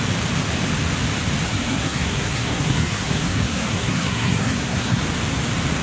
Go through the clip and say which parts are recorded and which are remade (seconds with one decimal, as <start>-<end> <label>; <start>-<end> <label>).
0.0-1.5 recorded; 1.5-5.0 remade; 5.0-5.8 recorded